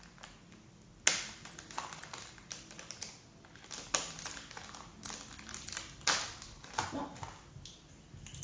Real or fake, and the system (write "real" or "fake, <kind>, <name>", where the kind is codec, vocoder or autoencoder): real